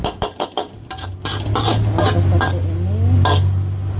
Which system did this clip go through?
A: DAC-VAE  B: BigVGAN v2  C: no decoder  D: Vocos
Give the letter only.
C